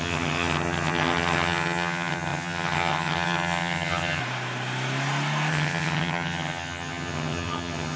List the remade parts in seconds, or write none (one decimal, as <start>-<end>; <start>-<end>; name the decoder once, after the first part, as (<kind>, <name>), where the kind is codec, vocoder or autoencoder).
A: 0.0-4.2 (vocoder, HiFi-GAN); 5.5-8.0